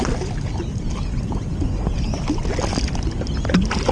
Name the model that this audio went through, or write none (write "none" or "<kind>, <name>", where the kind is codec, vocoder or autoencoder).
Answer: none